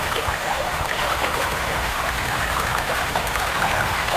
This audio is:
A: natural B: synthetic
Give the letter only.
B